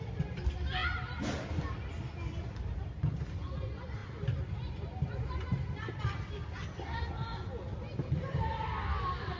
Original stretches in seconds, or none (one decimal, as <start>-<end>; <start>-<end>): 0.0-9.4